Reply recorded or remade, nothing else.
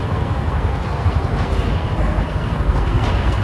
remade